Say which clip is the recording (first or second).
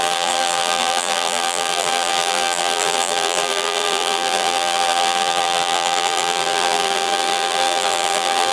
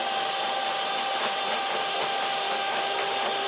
second